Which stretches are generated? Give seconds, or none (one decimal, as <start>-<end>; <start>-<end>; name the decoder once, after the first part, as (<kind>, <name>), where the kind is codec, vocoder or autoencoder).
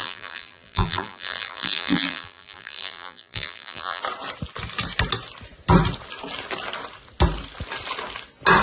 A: 0.0-4.0 (vocoder, BigVGAN v2)